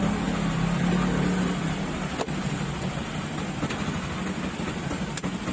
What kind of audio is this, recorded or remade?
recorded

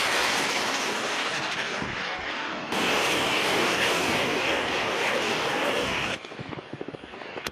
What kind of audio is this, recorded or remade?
remade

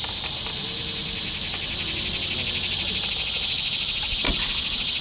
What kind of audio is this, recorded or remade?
recorded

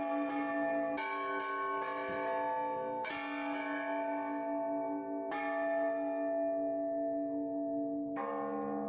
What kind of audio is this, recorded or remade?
recorded